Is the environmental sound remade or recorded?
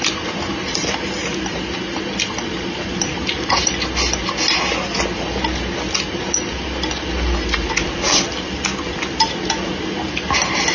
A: recorded